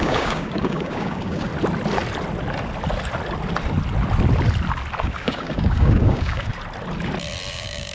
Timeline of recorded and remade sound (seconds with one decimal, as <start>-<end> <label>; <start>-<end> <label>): 0.0-1.5 remade; 1.5-5.0 recorded; 5.0-6.5 remade; 6.5-7.5 recorded; 7.5-7.9 remade

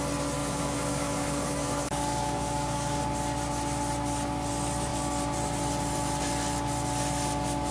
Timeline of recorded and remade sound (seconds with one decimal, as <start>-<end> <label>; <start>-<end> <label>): 0.0-0.4 recorded; 0.4-3.0 remade; 3.0-7.7 recorded

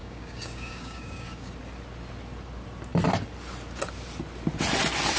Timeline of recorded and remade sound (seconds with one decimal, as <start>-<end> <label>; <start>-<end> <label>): 0.0-1.5 remade; 1.5-5.2 recorded